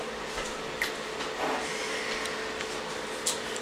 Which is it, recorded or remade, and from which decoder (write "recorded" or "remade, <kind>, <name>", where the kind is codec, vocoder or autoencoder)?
recorded